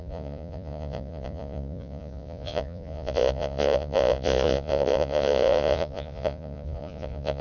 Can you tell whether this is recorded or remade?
remade